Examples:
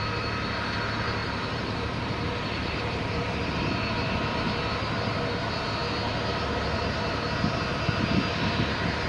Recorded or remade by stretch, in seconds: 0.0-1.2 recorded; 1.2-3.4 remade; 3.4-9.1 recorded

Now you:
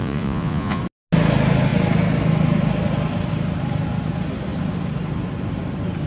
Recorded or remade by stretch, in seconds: 0.0-0.8 remade; 0.8-6.1 recorded

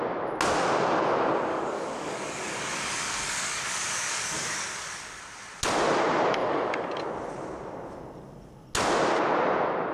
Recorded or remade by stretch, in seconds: 0.0-1.5 recorded; 1.5-5.2 remade; 5.2-6.4 recorded; 6.4-7.1 remade; 7.1-9.9 recorded

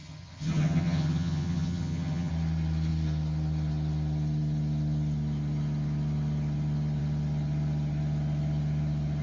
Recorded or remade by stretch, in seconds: 0.0-2.3 remade; 2.3-9.2 recorded